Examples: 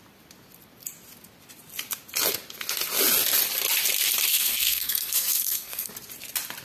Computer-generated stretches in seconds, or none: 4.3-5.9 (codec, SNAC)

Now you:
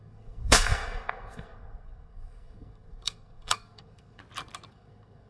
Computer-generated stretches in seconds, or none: 0.0-4.2 (codec, SNAC); 4.7-5.3

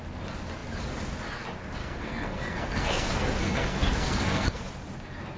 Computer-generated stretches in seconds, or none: 1.8-4.7 (codec, SNAC)